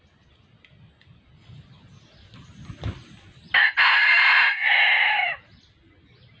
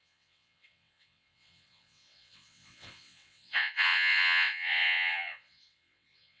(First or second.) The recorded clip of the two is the first